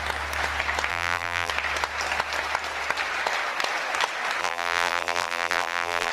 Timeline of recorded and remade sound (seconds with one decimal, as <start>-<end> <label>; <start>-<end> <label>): 0.0-0.9 recorded; 0.9-1.5 remade; 1.5-4.4 recorded; 4.4-6.1 remade